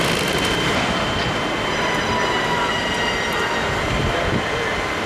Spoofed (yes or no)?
no